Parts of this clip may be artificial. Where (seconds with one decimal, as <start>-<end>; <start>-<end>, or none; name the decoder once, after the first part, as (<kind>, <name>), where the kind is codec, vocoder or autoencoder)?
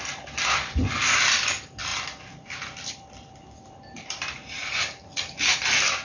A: 1.9-5.5 (vocoder, BigVGAN v2)